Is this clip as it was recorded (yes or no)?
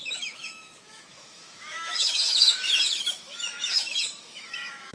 no